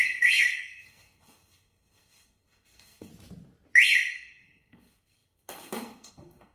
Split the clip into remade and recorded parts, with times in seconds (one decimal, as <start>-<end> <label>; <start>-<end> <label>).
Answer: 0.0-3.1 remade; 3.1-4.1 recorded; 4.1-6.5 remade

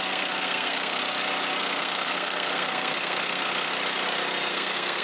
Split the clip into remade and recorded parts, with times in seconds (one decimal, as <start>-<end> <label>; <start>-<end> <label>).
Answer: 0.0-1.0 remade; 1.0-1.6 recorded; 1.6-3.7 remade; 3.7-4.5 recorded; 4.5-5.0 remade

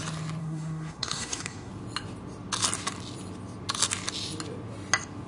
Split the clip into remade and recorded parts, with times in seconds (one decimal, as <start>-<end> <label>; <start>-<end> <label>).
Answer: 0.0-0.4 recorded; 0.4-1.7 remade; 1.7-5.3 recorded

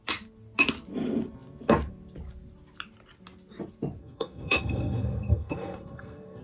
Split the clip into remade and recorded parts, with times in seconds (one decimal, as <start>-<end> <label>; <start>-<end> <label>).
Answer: 0.0-4.0 recorded; 4.0-6.4 remade